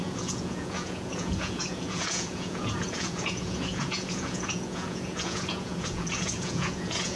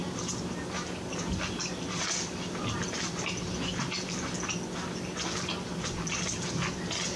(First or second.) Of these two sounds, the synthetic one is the first